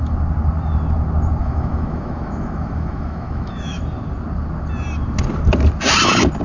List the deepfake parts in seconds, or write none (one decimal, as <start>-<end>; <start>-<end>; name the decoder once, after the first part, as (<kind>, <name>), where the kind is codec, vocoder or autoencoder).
1.4-3.8 (autoencoder, DAC-VAE)